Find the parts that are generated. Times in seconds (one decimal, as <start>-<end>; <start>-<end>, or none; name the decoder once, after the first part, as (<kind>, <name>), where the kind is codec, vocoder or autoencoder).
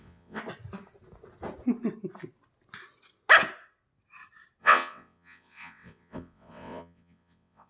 0.0-0.4 (vocoder, WaveNeXt); 4.6-7.7